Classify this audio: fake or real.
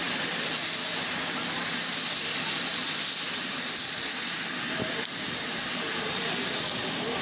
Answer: fake